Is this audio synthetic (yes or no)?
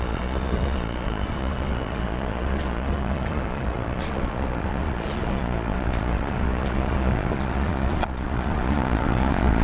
yes